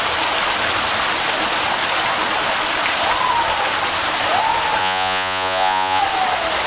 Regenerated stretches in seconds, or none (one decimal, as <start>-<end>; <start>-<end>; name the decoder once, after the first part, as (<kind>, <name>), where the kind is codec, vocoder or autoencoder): 4.8-6.0 (vocoder, Vocos)